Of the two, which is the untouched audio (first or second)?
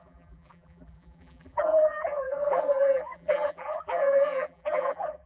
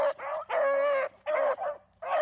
second